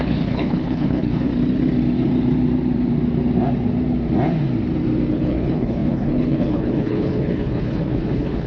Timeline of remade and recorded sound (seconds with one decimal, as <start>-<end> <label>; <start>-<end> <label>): 0.0-1.3 remade; 1.3-5.1 recorded; 5.1-8.5 remade